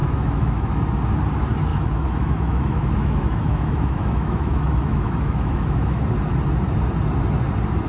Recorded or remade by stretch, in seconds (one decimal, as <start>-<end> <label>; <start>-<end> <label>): 0.0-0.8 remade; 0.8-1.7 recorded; 1.7-6.0 remade; 6.0-7.9 recorded